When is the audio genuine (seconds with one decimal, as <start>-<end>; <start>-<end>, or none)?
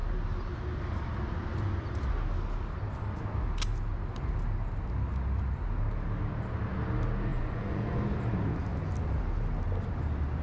0.0-7.3; 8.0-10.4